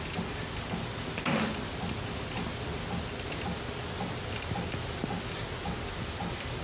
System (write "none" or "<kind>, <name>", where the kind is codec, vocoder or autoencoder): none